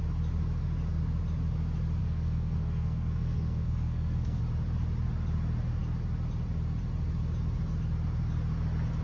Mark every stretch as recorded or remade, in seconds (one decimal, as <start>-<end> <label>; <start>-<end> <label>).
0.0-2.0 recorded; 2.0-4.4 remade; 4.4-9.0 recorded